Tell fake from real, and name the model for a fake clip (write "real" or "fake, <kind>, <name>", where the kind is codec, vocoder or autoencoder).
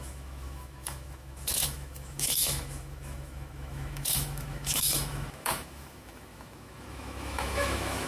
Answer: fake, autoencoder, DAC-VAE